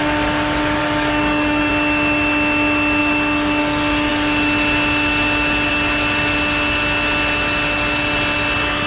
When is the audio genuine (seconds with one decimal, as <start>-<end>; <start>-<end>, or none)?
0.0-0.8; 1.7-8.9